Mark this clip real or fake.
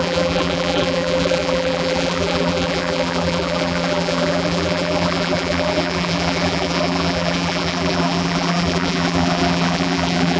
fake